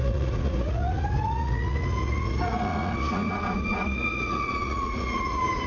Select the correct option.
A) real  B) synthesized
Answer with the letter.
B